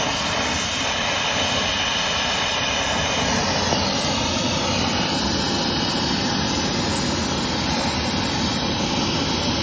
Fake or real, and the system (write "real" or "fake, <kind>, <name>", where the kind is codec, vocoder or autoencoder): real